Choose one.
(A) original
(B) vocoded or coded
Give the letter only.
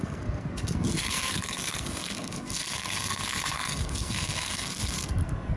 B